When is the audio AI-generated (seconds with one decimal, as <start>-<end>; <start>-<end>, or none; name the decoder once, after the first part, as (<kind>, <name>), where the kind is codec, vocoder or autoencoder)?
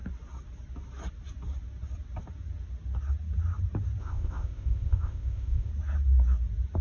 4.0-5.7 (codec, ZipCodec)